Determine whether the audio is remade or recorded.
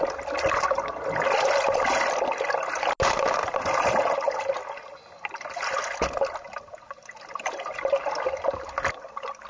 recorded